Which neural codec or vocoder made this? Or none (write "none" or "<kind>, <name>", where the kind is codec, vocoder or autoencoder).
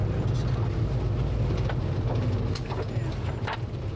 none